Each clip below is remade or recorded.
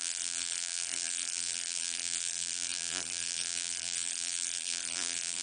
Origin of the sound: remade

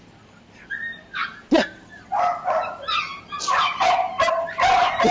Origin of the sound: recorded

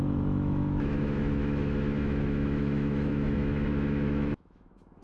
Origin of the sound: remade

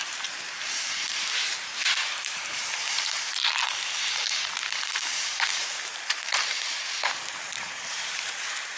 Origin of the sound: remade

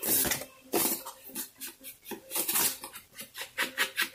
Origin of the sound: recorded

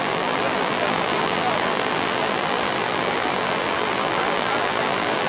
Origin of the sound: remade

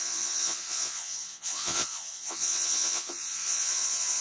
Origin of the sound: remade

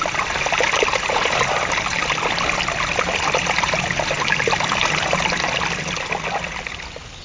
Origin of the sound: recorded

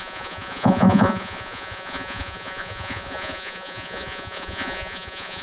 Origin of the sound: remade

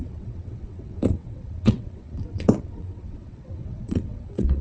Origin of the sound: remade